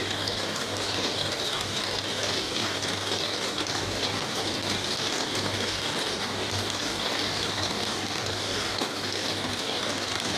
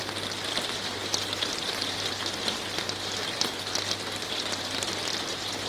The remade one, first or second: first